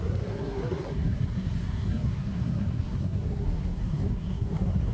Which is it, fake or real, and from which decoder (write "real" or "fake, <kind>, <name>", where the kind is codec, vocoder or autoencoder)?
fake, codec, SNAC